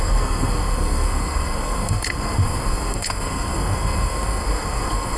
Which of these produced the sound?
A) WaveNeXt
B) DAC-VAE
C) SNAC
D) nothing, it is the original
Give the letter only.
C